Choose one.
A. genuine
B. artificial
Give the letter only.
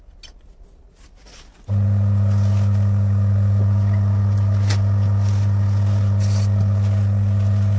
A